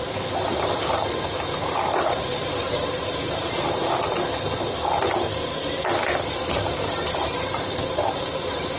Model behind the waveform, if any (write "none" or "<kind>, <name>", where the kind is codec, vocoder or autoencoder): vocoder, BigVGAN v2